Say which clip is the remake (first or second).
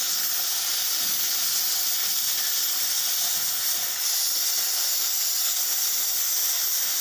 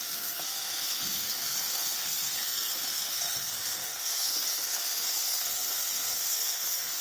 second